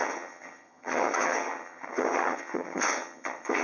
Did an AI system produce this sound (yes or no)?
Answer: yes